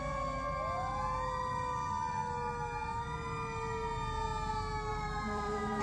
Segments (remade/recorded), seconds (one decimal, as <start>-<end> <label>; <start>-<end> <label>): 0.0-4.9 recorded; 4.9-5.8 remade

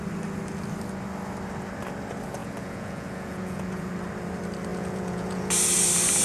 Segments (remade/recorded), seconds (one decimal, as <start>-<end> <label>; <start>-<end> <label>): 0.0-2.4 recorded; 2.4-3.9 remade; 3.9-4.7 recorded; 4.7-5.5 remade; 5.5-6.2 recorded

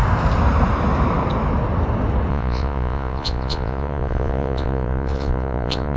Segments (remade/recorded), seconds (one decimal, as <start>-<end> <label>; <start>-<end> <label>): 0.0-2.3 recorded; 2.3-6.0 remade

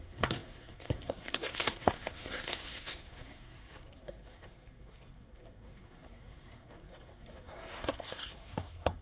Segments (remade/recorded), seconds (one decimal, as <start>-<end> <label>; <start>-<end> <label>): 0.0-9.0 remade